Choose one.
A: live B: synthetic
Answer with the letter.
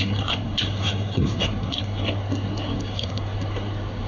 B